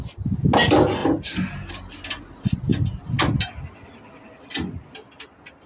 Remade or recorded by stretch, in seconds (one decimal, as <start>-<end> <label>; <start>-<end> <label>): 0.0-5.7 recorded